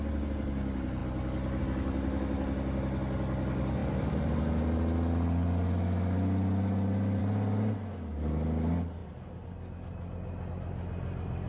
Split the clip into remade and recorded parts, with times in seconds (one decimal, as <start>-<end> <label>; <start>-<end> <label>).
0.0-11.5 recorded